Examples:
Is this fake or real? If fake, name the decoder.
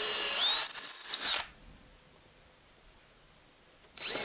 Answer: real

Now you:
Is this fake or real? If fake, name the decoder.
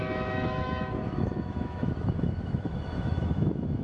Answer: fake, autoencoder, DAC-VAE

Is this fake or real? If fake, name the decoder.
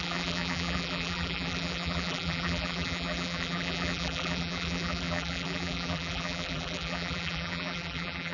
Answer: fake, vocoder, BigVGAN v2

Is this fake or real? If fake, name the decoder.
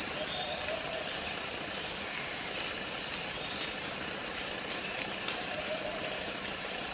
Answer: real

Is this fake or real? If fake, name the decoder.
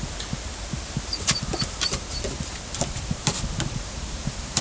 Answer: fake, vocoder, BigVGAN v2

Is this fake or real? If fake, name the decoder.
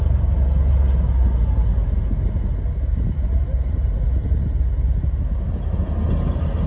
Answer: real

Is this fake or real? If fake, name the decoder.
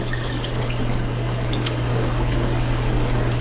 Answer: fake, codec, DAC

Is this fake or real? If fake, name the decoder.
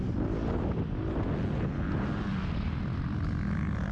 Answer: real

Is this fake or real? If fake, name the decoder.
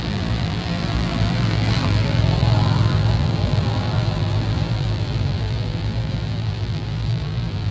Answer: fake, vocoder, BigVGAN v2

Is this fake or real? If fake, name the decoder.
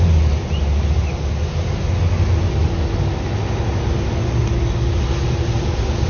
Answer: real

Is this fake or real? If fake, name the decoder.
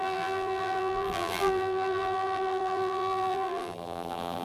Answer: fake, vocoder, BigVGAN v2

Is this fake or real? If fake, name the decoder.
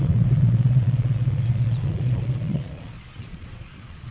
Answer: fake, vocoder, Vocos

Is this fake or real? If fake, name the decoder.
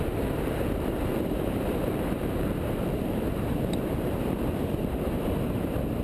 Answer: fake, vocoder, BigVGAN v2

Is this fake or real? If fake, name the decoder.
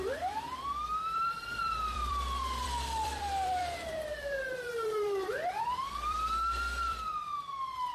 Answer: fake, vocoder, BigVGAN v2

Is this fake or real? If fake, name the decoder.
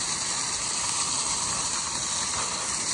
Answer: real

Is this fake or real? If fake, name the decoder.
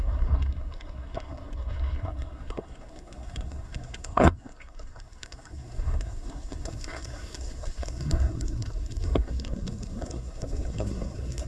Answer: fake, codec, SNAC